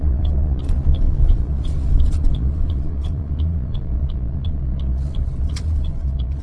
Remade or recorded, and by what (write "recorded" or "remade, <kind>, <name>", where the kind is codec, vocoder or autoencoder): remade, vocoder, Vocos